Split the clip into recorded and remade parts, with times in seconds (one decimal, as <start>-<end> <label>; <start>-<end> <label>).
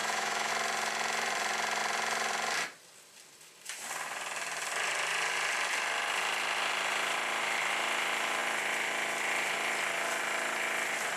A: 0.0-0.5 remade; 0.5-11.2 recorded